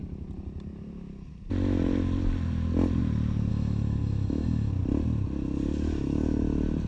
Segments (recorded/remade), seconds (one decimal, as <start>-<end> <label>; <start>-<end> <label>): 0.0-3.5 recorded; 3.5-4.7 remade; 4.7-6.9 recorded